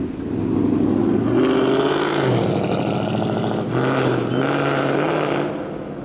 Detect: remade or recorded recorded